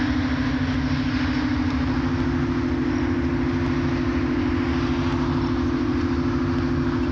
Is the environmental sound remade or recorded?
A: recorded